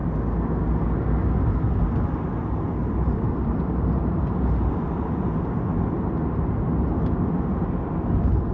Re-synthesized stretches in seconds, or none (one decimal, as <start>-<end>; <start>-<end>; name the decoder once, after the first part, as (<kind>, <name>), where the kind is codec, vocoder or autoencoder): 0.0-0.6 (vocoder, BigVGAN v2); 2.8-7.9